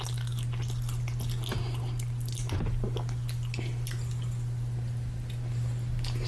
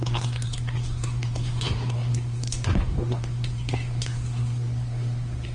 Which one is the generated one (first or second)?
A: second